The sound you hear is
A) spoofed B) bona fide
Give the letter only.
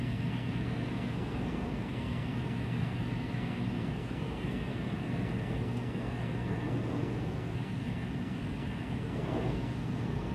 A